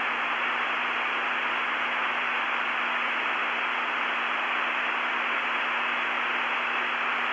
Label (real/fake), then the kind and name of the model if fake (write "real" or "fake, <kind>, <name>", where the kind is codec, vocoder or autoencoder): real